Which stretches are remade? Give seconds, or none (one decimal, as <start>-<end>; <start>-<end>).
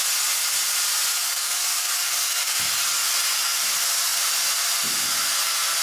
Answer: 1.1-2.6